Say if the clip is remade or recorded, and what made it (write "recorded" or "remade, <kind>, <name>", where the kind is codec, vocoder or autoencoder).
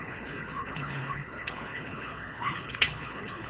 remade, codec, HILCodec